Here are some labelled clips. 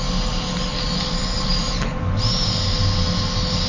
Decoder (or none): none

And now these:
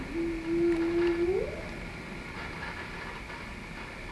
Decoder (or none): none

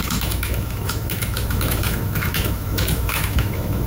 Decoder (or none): autoencoder, DAC-VAE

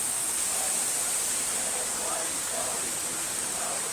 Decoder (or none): vocoder, BigVGAN v2